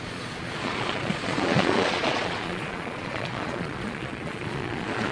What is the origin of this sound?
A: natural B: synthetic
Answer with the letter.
B